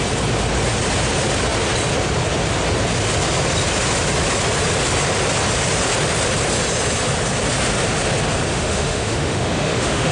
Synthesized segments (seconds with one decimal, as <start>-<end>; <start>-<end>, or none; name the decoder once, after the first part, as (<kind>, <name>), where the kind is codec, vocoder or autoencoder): 8.5-10.1 (autoencoder, DAC-VAE)